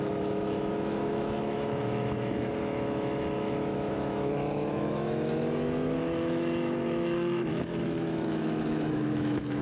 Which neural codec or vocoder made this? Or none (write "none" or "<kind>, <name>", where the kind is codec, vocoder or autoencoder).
autoencoder, DAC-VAE